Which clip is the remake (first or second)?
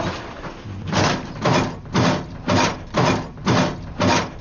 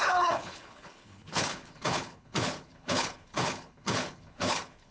second